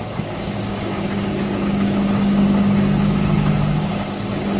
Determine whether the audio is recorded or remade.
remade